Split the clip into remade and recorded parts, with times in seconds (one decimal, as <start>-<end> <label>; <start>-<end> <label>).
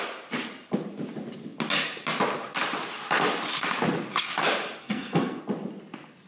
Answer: 0.0-4.8 recorded; 4.8-5.4 remade; 5.4-6.3 recorded